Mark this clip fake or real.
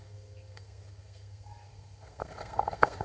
fake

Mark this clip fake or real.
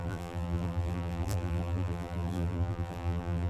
fake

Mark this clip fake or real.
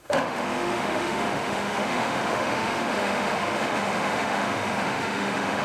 fake